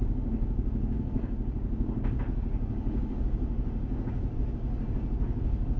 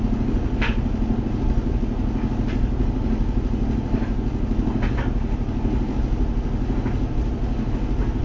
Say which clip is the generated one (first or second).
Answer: first